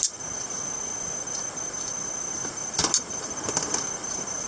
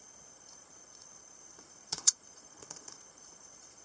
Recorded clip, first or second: first